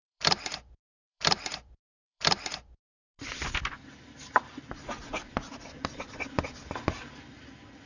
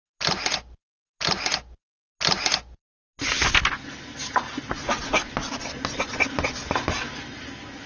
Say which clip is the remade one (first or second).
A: first